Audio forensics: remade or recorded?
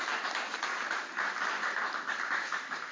recorded